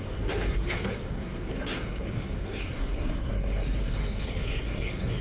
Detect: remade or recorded remade